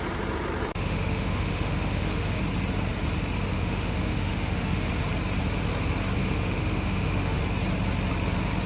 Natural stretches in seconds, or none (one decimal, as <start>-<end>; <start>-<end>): 0.0-0.7; 2.4-3.5; 4.9-6.2; 7.4-8.7